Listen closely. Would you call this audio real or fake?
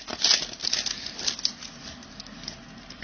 real